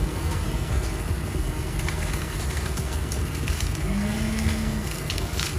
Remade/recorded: remade